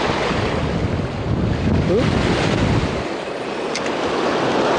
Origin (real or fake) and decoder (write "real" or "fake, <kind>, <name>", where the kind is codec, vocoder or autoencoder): real